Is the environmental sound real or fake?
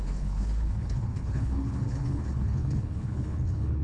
fake